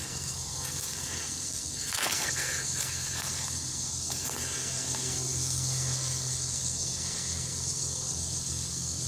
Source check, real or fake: fake